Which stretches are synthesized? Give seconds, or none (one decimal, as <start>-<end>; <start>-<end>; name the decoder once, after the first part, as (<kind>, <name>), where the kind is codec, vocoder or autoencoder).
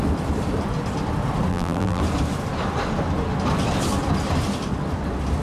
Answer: 1.5-2.0 (vocoder, BigVGAN v2)